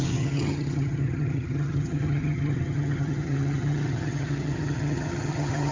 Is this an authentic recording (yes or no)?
no